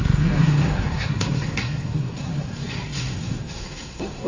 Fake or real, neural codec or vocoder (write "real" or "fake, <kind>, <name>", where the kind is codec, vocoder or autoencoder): fake, codec, SNAC